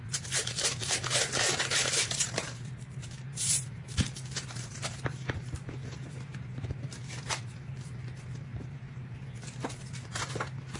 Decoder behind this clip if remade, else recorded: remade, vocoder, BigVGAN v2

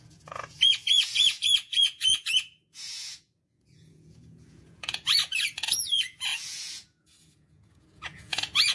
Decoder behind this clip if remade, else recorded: remade, vocoder, Vocos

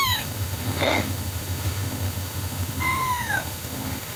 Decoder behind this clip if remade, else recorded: remade, autoencoder, DAC-VAE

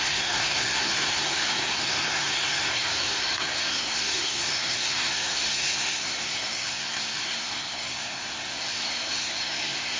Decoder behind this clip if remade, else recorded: remade, codec, SNAC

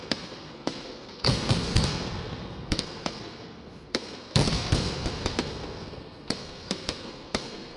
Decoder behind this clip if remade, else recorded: remade, codec, SNAC